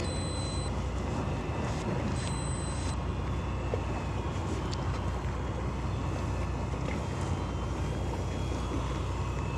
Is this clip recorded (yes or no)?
yes